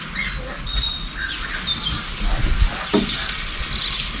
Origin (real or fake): real